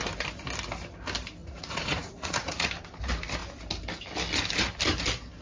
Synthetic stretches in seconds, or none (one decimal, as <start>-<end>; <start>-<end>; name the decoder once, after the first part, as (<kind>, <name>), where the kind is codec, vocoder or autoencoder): 1.4-2.7 (vocoder, Vocos)